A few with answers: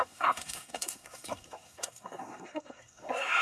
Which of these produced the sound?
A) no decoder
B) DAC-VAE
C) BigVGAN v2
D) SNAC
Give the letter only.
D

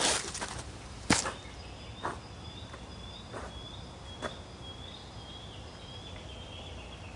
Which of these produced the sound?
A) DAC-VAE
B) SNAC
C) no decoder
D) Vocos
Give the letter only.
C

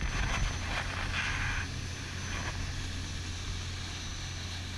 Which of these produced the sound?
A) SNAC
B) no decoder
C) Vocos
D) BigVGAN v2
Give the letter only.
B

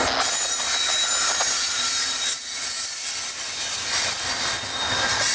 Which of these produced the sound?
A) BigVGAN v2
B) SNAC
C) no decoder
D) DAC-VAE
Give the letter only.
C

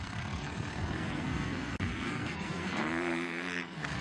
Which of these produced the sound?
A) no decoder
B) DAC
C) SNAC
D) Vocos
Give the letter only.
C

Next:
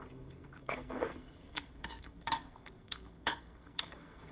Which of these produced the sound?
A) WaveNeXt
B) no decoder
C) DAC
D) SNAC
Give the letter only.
D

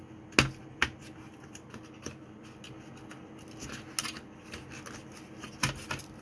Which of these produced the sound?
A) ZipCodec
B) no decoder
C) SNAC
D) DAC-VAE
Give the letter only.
B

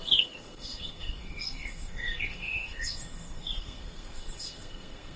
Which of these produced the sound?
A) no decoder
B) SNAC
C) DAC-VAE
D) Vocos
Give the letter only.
B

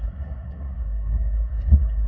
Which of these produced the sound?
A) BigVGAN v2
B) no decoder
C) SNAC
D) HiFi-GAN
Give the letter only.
C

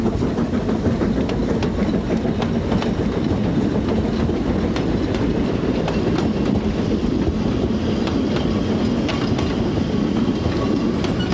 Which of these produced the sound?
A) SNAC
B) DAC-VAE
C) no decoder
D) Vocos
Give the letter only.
C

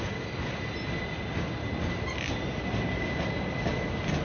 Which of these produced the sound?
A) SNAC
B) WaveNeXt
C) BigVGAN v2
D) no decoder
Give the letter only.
D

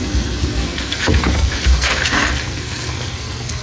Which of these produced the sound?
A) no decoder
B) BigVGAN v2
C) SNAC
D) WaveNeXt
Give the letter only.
C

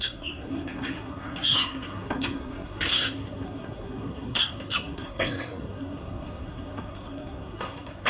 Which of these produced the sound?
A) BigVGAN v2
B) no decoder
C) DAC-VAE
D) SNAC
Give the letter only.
D